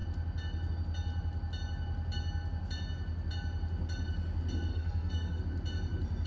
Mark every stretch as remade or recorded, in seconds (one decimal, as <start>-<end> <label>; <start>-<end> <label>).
0.0-4.7 recorded; 4.7-5.4 remade; 5.4-6.3 recorded